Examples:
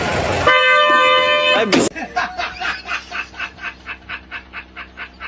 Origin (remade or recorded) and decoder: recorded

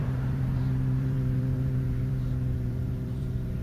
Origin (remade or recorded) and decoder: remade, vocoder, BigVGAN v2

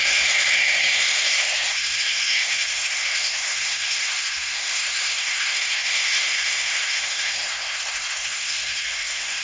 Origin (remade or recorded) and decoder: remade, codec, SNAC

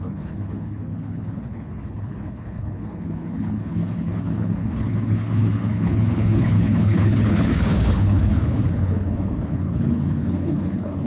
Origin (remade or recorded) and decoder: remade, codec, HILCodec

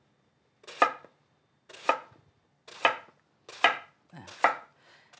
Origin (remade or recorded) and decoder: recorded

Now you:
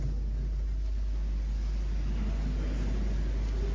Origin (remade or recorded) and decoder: recorded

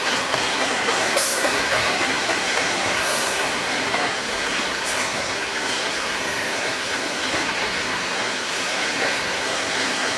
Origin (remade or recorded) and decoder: remade, codec, SNAC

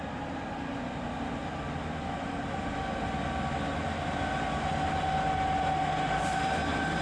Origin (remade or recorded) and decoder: recorded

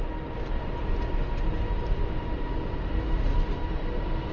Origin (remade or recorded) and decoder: recorded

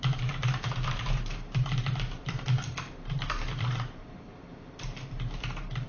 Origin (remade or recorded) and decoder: remade, vocoder, BigVGAN v2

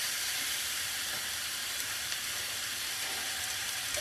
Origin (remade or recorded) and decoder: remade, vocoder, BigVGAN v2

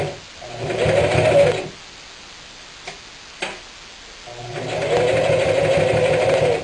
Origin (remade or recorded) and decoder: recorded